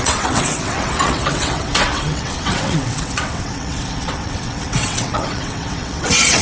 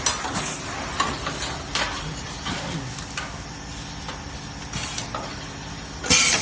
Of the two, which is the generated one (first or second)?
first